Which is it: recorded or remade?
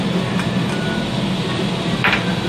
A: recorded